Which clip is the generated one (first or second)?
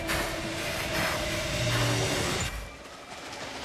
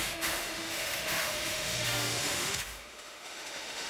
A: second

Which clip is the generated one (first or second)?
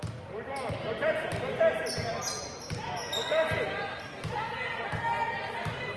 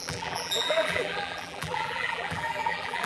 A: second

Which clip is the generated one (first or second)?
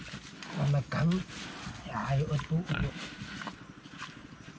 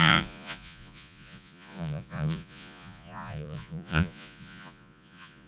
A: second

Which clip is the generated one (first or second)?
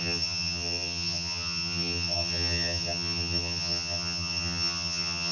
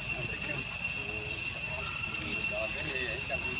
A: first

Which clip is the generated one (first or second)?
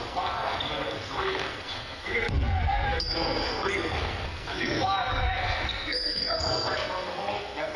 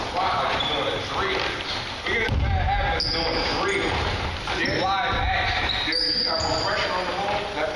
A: first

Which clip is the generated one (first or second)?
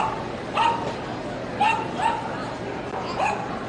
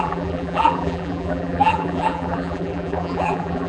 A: second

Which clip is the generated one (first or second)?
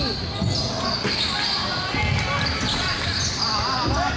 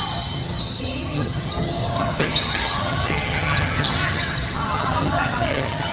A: second